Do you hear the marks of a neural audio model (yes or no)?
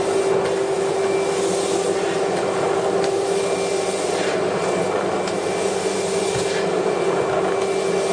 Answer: no